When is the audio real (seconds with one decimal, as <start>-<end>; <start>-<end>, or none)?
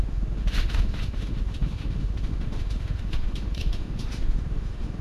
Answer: none